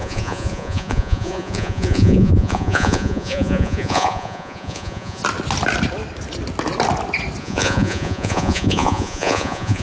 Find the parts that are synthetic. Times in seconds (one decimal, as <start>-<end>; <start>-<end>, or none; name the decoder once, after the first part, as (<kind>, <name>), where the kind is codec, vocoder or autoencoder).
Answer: 0.0-5.2 (vocoder, Vocos); 7.4-9.8